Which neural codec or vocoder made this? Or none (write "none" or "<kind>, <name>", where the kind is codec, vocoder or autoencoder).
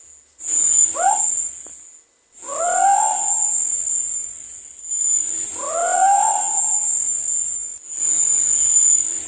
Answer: none